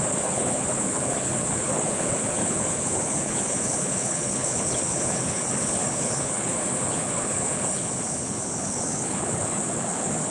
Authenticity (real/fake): fake